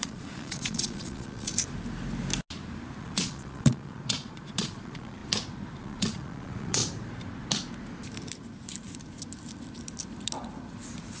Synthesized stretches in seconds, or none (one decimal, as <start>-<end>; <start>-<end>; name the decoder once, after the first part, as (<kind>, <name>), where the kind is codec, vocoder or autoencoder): 0.0-1.5 (vocoder, Vocos); 3.0-5.2; 5.8-6.8